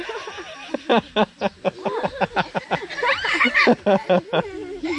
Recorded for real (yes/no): yes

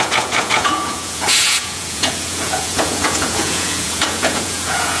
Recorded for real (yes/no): no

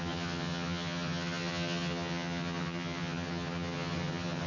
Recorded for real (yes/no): no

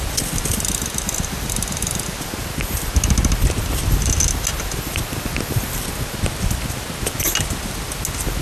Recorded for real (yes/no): yes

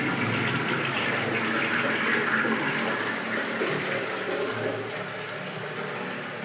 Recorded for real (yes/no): yes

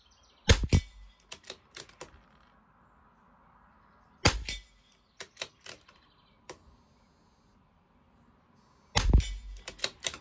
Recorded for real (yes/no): yes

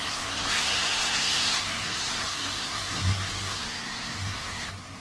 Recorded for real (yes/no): no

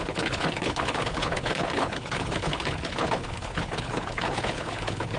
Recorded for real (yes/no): no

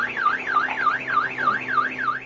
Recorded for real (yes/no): yes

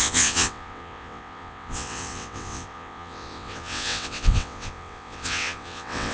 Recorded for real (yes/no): no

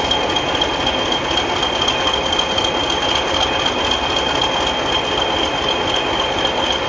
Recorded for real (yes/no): yes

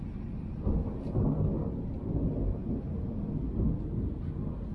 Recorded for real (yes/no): yes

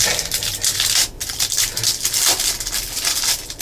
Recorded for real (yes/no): yes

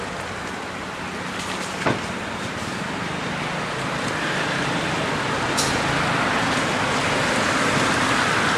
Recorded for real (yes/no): yes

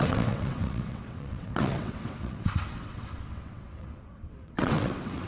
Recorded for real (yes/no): no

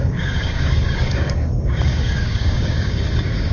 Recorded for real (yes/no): no